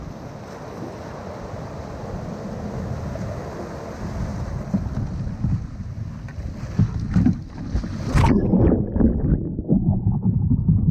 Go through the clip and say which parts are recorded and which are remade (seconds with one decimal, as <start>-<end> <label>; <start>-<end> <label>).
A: 0.0-9.7 recorded; 9.7-10.4 remade; 10.4-10.9 recorded